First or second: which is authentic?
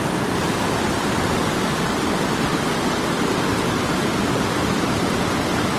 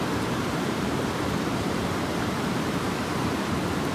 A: first